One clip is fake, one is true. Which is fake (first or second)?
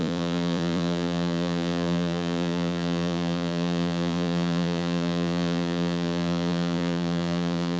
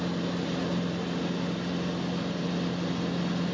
first